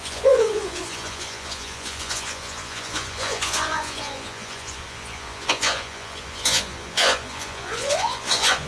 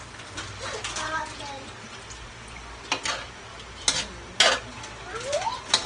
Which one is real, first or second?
second